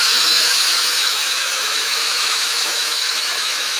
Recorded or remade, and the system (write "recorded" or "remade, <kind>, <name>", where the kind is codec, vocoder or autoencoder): remade, autoencoder, DAC-VAE